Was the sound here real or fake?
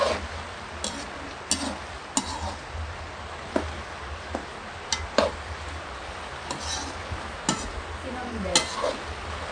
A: real